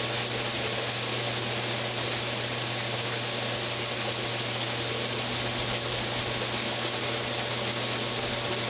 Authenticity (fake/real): real